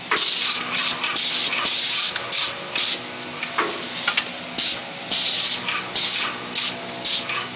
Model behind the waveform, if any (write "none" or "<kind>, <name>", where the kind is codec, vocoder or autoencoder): none